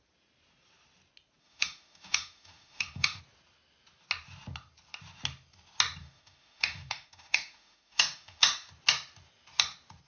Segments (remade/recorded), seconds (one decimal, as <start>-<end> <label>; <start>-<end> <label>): 0.0-1.4 recorded; 1.4-3.2 remade; 3.2-6.0 recorded; 6.0-8.7 remade; 8.7-10.1 recorded